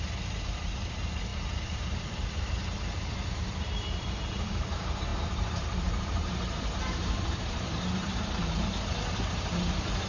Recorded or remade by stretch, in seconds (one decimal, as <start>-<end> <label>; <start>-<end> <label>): 0.0-10.1 remade